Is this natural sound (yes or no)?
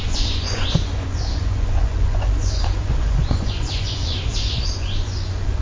no